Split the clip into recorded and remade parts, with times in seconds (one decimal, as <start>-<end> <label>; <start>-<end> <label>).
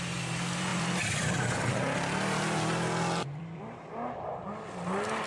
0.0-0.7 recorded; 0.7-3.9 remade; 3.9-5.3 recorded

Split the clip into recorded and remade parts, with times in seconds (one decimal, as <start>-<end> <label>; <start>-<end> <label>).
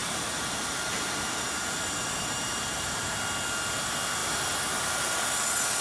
0.0-3.1 remade; 3.1-4.2 recorded; 4.2-5.2 remade; 5.2-5.8 recorded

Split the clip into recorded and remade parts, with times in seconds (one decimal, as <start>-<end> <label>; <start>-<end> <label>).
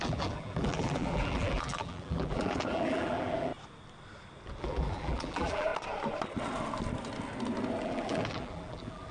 0.0-3.5 remade; 3.5-4.6 recorded; 4.6-5.7 remade; 5.7-7.8 recorded; 7.8-9.1 remade